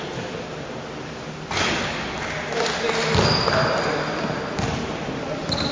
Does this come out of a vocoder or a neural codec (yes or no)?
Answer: no